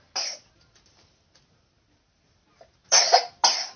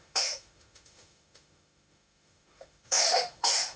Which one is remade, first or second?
second